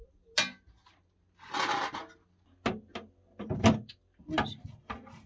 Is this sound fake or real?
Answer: real